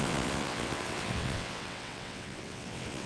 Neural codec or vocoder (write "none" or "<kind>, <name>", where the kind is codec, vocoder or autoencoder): vocoder, WaveNeXt